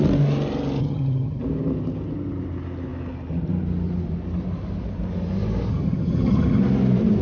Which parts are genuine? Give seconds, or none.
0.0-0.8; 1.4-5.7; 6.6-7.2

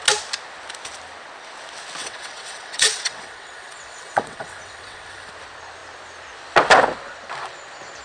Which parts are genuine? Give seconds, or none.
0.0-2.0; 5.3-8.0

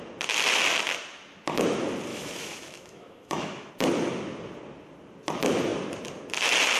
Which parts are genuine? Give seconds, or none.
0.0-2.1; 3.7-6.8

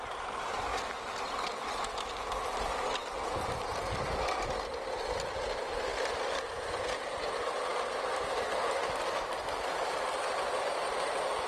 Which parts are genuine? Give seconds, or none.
0.0-11.5